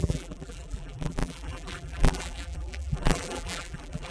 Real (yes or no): no